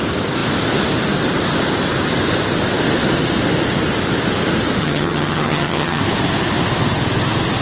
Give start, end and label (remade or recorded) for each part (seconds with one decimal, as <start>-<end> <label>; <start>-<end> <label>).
0.0-4.8 recorded; 4.8-6.0 remade; 6.0-7.6 recorded